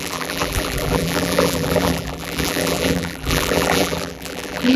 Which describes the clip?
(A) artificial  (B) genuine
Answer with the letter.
A